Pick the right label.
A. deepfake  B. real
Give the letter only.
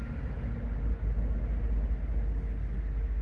B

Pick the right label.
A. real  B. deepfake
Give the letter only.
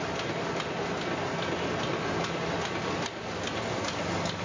A